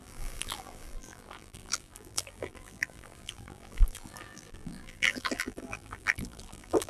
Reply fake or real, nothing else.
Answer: fake